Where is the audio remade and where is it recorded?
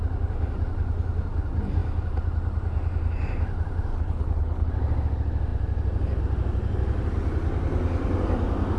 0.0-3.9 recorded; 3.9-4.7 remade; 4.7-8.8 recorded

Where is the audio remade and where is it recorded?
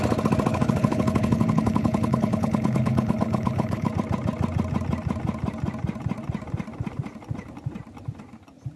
0.0-0.5 recorded; 0.5-3.9 remade; 3.9-8.8 recorded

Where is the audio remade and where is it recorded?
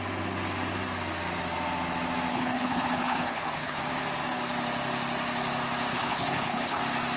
0.0-2.3 recorded; 2.3-3.8 remade; 3.8-5.9 recorded; 5.9-6.8 remade; 6.8-7.2 recorded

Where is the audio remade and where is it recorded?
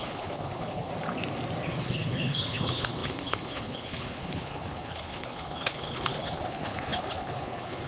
0.0-0.9 remade; 0.9-1.8 recorded; 1.8-7.9 remade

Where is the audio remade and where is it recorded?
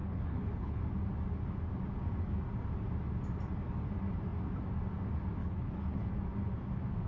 0.0-0.8 remade; 0.8-5.4 recorded; 5.4-6.1 remade; 6.1-7.1 recorded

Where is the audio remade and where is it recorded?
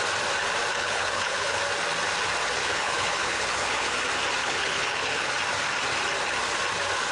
0.0-0.7 recorded; 0.7-1.6 remade; 1.6-2.6 recorded; 2.6-3.9 remade; 3.9-4.4 recorded; 4.4-5.3 remade; 5.3-7.1 recorded